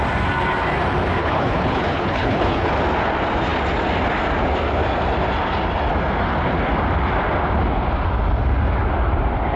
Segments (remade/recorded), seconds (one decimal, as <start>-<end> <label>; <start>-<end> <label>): 0.0-1.2 recorded; 1.2-2.7 remade; 2.7-9.6 recorded